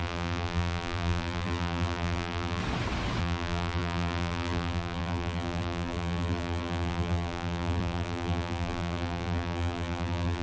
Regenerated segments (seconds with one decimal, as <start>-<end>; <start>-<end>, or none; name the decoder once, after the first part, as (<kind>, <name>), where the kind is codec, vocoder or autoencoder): 0.0-2.6 (vocoder, BigVGAN v2); 3.2-10.4